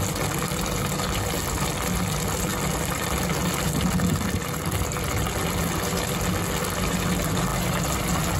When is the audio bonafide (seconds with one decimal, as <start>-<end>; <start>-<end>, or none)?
0.0-8.4